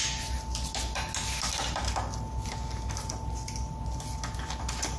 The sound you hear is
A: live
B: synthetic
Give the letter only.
A